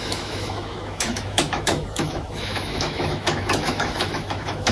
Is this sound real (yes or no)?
no